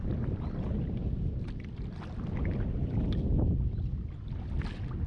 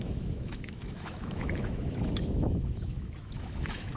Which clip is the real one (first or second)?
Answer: first